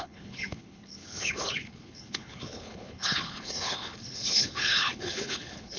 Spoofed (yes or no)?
yes